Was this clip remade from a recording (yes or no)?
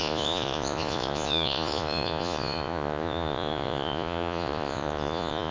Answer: yes